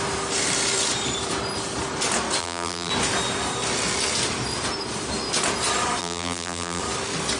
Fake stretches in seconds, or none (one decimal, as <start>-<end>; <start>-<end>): 2.4-2.9; 6.0-6.8